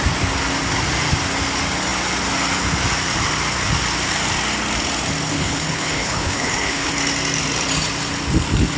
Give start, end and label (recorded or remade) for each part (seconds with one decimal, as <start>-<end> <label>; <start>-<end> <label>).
0.0-5.3 recorded; 5.3-6.9 remade; 6.9-8.8 recorded